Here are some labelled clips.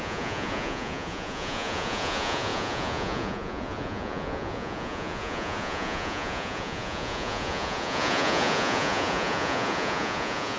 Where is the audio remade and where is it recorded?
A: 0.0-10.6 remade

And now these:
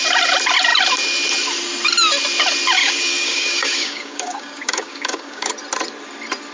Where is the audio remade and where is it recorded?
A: 0.0-2.8 recorded; 2.8-5.5 remade; 5.5-6.5 recorded

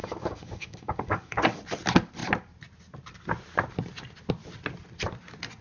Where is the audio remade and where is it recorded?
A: 0.0-1.6 remade; 1.6-5.6 recorded

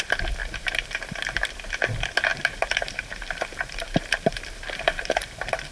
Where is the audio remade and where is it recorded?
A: 0.0-0.4 recorded; 0.4-1.4 remade; 1.4-2.3 recorded; 2.3-5.7 remade

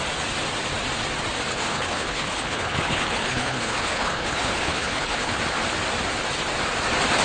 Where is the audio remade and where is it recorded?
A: 0.0-1.5 recorded; 1.5-5.4 remade; 5.4-7.2 recorded

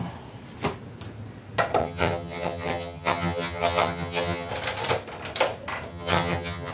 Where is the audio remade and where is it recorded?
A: 0.0-1.8 recorded; 1.8-4.5 remade; 4.5-5.9 recorded; 5.9-6.7 remade

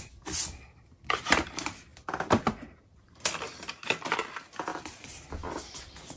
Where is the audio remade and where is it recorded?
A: 0.0-6.2 recorded